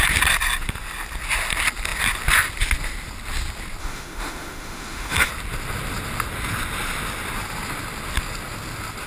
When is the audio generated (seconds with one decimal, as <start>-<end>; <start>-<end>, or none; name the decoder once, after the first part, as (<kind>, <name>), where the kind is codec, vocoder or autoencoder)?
3.8-5.3 (autoencoder, DAC-VAE)